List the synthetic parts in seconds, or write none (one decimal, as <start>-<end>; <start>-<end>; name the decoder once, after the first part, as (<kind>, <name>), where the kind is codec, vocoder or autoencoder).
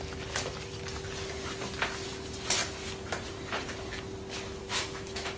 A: 4.6-5.4 (autoencoder, DAC-VAE)